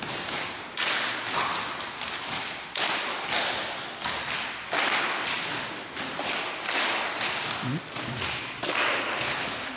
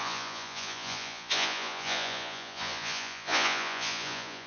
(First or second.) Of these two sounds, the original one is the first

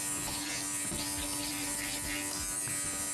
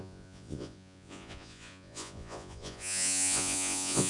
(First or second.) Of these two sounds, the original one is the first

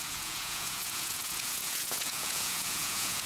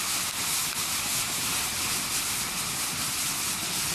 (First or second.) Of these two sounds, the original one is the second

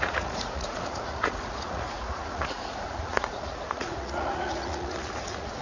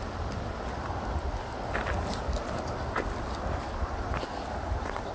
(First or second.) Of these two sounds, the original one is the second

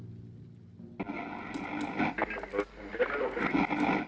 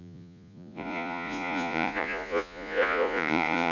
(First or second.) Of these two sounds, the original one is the first